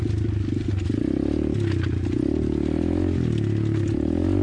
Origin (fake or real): real